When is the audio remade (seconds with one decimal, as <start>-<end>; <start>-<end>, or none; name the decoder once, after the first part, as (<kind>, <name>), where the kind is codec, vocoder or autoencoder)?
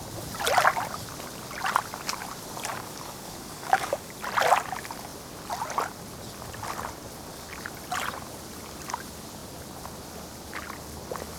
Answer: 2.7-4.1 (codec, DAC)